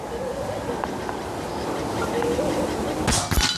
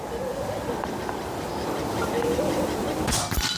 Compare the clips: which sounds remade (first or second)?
second